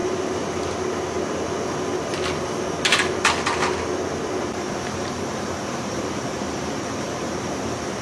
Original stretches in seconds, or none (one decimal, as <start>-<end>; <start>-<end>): 0.0-4.8